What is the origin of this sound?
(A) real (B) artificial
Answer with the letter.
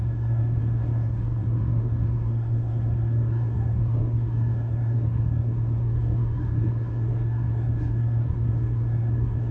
B